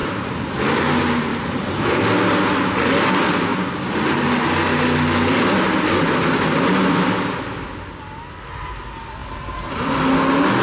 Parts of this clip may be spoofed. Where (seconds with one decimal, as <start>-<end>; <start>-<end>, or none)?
0.0-0.6; 1.3-2.0; 9.2-10.0